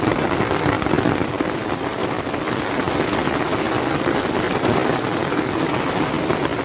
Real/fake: real